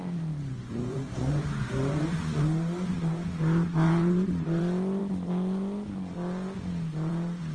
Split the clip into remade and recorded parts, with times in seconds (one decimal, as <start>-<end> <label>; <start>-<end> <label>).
0.0-0.5 recorded; 0.5-4.6 remade; 4.6-7.5 recorded